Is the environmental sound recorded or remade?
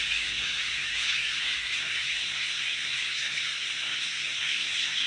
remade